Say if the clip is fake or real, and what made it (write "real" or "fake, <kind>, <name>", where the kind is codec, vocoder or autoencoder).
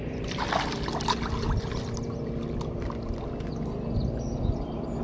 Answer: real